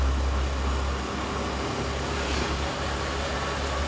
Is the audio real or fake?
real